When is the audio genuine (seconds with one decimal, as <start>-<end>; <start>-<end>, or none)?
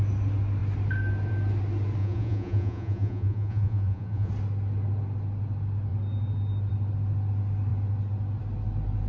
0.0-2.0; 4.3-9.1